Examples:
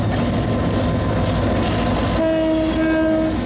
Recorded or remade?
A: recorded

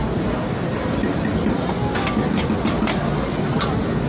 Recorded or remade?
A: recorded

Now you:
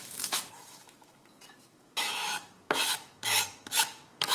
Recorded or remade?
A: remade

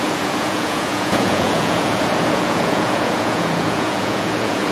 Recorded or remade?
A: remade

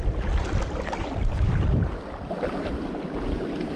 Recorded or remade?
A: recorded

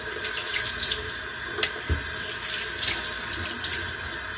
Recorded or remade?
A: recorded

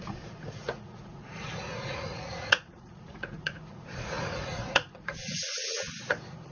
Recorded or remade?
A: remade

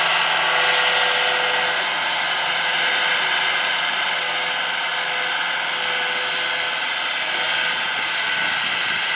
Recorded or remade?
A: recorded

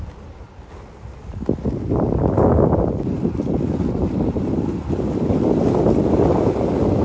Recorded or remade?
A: remade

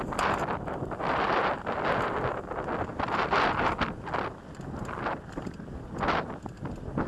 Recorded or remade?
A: recorded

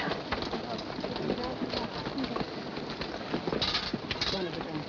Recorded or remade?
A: recorded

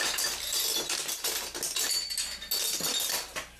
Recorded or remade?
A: recorded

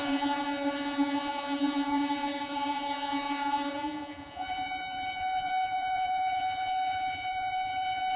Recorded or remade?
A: remade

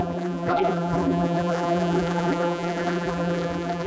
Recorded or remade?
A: remade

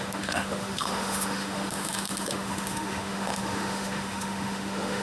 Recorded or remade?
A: remade